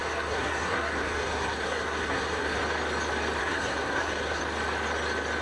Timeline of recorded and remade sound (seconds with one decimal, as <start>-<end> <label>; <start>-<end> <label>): 0.0-2.6 remade; 2.6-3.4 recorded; 3.4-4.4 remade; 4.4-5.4 recorded